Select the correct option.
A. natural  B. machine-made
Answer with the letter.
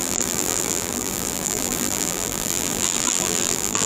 B